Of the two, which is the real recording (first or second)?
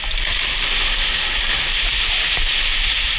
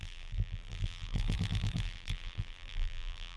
first